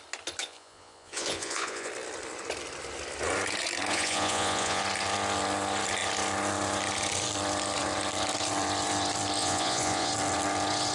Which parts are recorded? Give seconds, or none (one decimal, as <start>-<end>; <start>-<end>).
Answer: 0.0-0.4; 1.9-3.9; 4.8-9.4; 10.1-10.9